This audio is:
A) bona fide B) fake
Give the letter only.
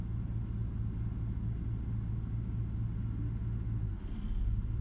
A